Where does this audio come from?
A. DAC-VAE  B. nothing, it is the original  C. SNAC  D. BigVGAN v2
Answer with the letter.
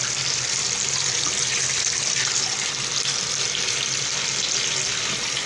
B